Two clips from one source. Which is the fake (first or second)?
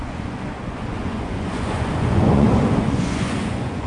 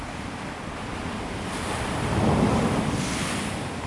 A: first